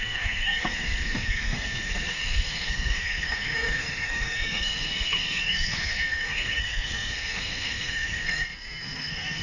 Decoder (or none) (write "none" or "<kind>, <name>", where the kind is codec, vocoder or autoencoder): codec, SNAC